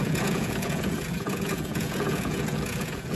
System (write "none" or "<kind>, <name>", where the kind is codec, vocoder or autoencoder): vocoder, Vocos